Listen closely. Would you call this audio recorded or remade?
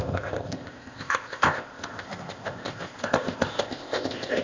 remade